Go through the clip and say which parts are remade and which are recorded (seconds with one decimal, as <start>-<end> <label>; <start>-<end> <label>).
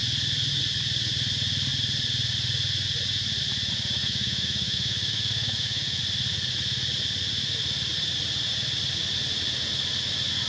0.0-4.0 recorded; 4.0-6.0 remade; 6.0-10.5 recorded